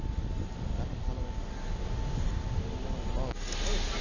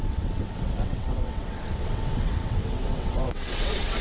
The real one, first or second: first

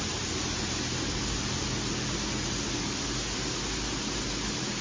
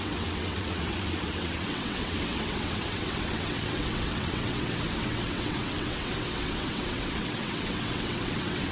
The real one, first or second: first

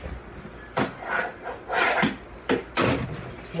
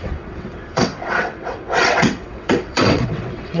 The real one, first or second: first